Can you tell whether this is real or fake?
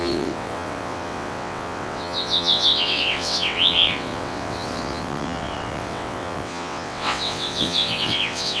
fake